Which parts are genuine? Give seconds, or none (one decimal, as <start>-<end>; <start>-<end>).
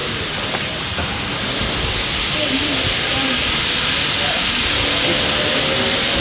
0.0-6.2